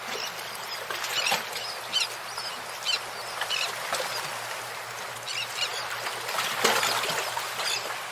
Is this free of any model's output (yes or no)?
yes